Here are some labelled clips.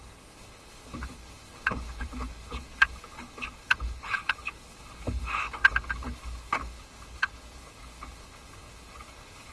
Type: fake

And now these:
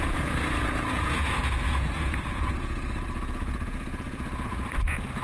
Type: fake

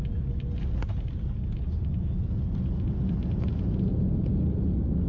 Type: real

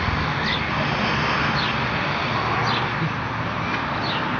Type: real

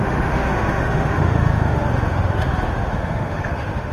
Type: fake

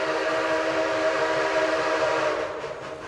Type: real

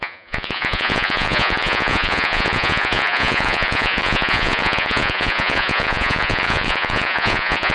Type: fake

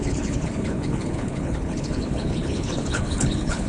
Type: fake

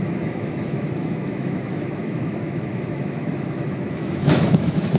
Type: fake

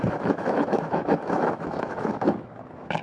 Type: fake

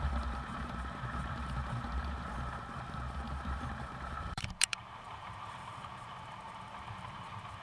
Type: fake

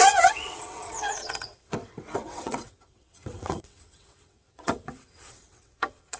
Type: fake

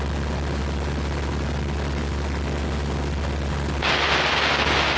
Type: real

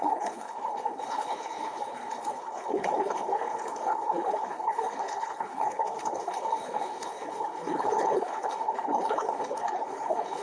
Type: fake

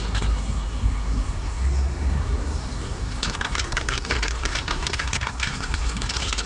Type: fake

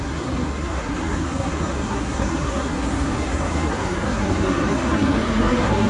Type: fake